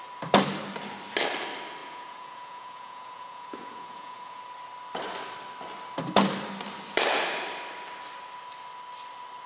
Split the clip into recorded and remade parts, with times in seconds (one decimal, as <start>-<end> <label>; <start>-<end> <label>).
0.0-1.8 recorded; 1.8-4.4 remade; 4.4-9.5 recorded